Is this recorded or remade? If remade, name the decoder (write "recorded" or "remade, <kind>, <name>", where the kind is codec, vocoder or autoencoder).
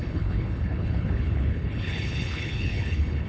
remade, codec, HILCodec